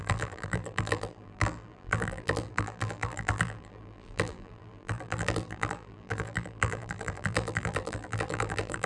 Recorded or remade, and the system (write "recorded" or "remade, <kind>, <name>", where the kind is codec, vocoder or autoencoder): remade, vocoder, BigVGAN v2